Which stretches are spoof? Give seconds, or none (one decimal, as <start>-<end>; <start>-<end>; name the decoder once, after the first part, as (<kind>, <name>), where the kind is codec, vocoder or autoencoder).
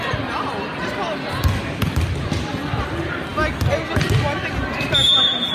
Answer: none